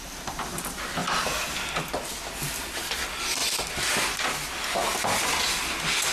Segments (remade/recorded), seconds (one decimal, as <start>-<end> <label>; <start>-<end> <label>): 0.0-3.4 recorded; 3.4-4.0 remade; 4.0-4.9 recorded; 4.9-5.6 remade; 5.6-6.1 recorded